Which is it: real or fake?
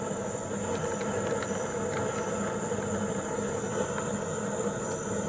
real